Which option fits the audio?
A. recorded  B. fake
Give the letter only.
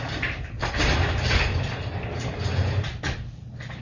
A